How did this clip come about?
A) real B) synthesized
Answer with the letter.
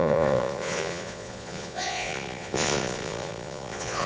B